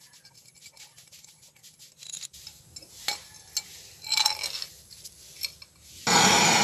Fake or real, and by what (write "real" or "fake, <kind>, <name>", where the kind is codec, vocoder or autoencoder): real